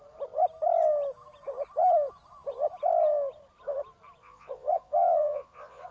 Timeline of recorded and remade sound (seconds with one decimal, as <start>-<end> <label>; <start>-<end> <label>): 0.0-4.2 recorded; 4.2-5.9 remade